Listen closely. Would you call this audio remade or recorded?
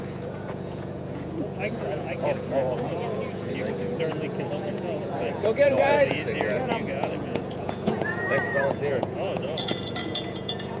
remade